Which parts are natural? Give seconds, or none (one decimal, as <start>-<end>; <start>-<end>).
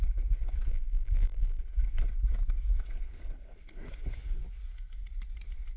0.0-0.7; 1.6-5.8